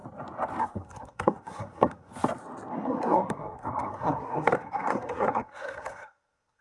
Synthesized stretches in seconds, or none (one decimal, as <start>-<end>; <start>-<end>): 0.6-2.1; 2.7-6.6